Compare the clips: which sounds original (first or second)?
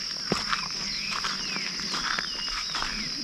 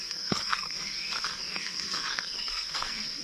first